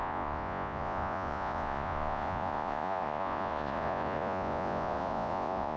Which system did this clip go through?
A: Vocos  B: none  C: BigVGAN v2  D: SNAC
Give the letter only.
A